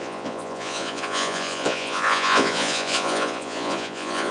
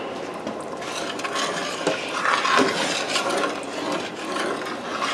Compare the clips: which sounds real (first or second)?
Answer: second